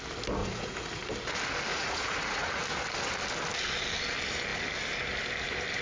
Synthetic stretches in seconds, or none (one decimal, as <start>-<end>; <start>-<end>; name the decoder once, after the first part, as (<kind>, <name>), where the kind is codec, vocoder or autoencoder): 0.4-1.1 (vocoder, Vocos); 1.7-2.6